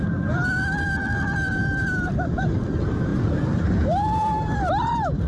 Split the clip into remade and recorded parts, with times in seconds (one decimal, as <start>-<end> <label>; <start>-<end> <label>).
0.0-5.3 remade